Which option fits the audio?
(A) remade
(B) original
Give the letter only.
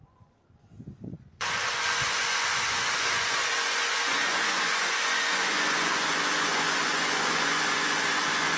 A